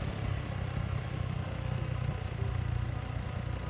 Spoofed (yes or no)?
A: no